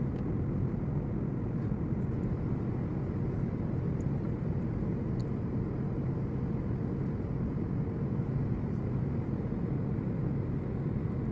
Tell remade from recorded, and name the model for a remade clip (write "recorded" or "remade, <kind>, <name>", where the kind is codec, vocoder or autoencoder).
recorded